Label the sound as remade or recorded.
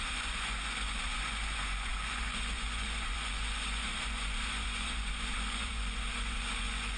remade